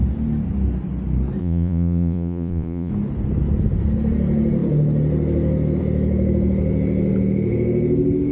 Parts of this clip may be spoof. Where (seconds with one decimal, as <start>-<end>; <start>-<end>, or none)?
1.4-2.9